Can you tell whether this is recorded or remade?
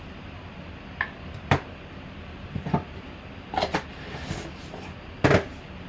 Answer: recorded